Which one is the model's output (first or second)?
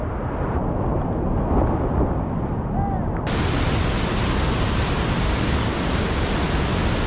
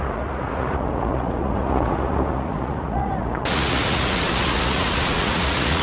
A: second